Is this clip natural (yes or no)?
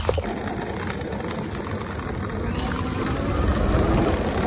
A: yes